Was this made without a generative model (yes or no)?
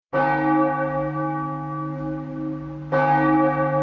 yes